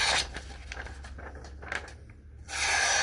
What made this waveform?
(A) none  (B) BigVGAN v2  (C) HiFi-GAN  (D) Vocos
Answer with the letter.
A